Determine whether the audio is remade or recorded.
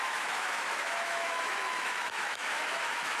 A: remade